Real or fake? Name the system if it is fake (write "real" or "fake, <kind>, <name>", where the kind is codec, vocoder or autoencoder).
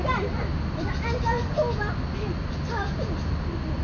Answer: real